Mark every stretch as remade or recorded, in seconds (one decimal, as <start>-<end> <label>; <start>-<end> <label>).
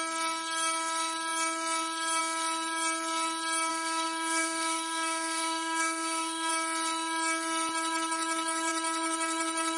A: 0.0-3.7 recorded; 3.7-6.5 remade; 6.5-9.8 recorded